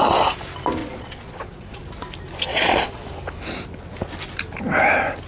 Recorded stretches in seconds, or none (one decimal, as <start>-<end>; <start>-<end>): 0.0-0.8; 1.8-2.5; 3.0-5.3